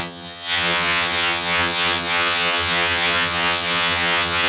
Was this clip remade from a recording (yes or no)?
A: yes